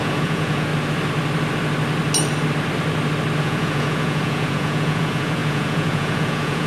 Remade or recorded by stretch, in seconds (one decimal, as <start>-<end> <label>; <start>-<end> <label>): 0.0-0.7 remade; 0.7-3.4 recorded; 3.4-6.7 remade